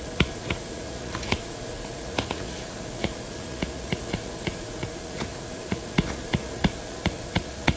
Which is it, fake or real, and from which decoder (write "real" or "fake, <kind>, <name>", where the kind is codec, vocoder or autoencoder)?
fake, vocoder, Vocos